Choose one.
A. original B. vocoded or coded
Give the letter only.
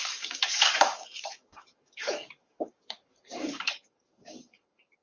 B